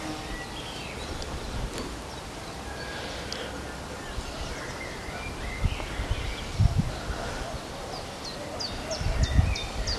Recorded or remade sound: recorded